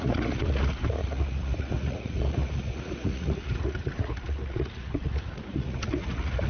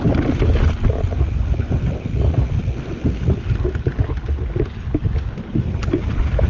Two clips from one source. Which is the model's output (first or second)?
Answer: first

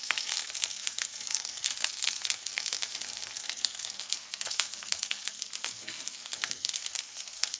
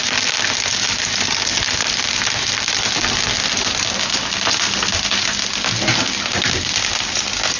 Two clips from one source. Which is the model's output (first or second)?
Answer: first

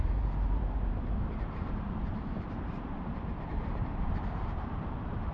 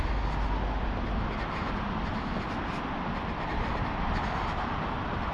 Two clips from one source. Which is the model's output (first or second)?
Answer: first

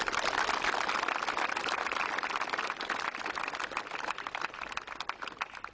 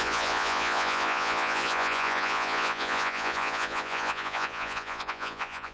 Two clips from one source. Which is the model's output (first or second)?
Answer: second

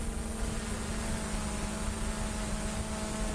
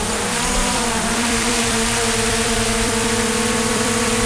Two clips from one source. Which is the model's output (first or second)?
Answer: second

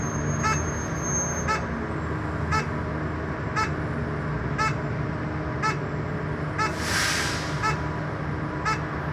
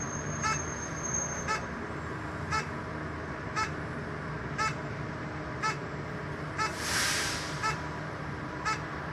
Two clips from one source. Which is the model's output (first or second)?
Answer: second